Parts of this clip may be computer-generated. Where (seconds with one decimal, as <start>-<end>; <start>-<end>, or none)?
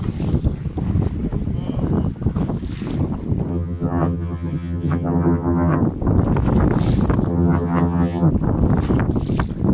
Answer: 3.5-5.8; 7.3-8.3